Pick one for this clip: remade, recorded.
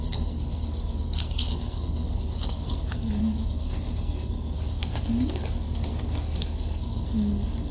remade